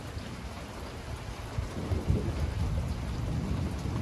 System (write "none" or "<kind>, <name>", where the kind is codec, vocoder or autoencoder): none